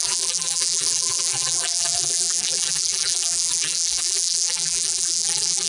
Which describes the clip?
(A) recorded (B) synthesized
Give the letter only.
B